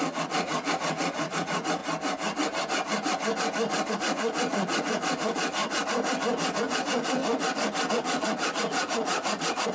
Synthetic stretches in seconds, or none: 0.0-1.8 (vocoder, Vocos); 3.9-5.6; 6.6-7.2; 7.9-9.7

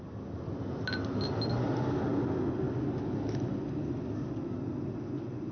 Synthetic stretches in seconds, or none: none

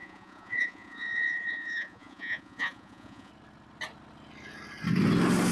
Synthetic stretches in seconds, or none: 0.0-3.3 (vocoder, Vocos)

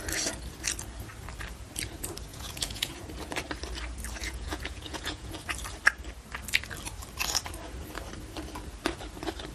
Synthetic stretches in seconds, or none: 2.3-2.9 (vocoder, Vocos); 4.2-5.3

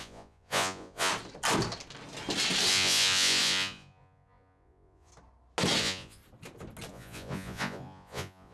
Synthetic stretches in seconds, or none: 0.0-1.1 (vocoder, Vocos); 2.7-5.1; 5.8-6.2; 6.9-8.5

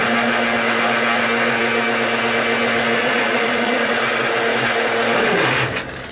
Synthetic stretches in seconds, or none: 3.0-4.0 (vocoder, Vocos)